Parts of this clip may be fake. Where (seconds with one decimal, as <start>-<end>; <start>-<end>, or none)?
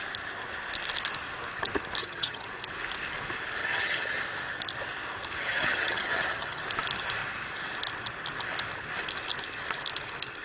2.0-2.5; 3.6-4.2; 5.4-6.6